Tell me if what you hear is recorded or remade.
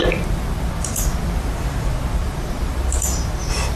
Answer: remade